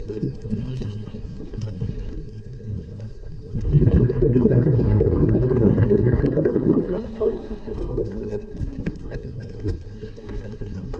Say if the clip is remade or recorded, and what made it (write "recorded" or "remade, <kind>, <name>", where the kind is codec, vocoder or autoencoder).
remade, codec, SNAC